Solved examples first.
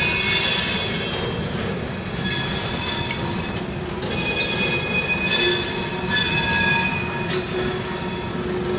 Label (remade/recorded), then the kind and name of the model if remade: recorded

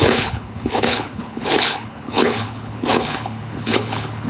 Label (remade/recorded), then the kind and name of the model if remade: remade, codec, HILCodec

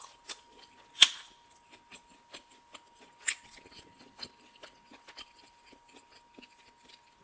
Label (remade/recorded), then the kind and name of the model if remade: recorded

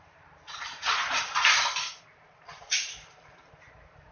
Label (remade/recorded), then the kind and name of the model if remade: remade, vocoder, BigVGAN v2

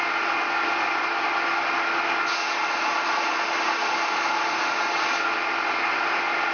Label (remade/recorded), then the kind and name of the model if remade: recorded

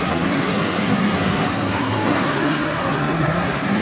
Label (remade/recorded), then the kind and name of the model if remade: remade, codec, SNAC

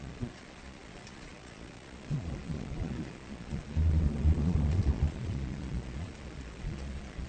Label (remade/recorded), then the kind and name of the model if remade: remade, vocoder, Vocos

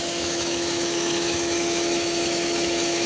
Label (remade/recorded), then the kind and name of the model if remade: remade, autoencoder, DAC-VAE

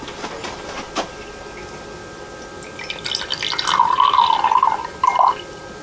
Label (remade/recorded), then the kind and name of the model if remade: recorded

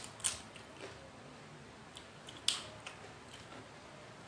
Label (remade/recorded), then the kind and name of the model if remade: recorded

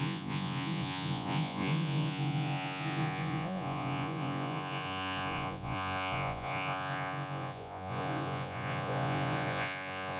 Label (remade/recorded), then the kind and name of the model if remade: remade, vocoder, Vocos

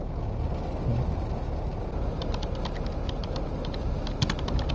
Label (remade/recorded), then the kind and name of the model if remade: recorded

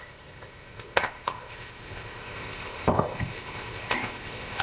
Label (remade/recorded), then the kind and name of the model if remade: remade, codec, ZipCodec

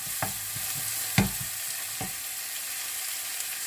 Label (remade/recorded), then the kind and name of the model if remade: recorded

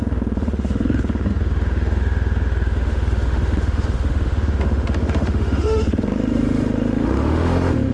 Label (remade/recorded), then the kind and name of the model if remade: remade, autoencoder, DAC-VAE